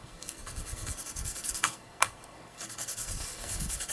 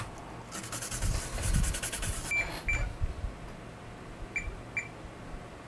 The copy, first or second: first